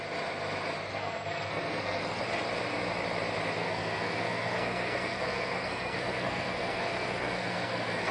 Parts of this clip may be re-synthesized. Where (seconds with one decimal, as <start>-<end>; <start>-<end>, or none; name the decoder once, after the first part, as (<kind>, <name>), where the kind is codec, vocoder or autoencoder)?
0.9-2.2 (codec, SNAC); 3.6-8.1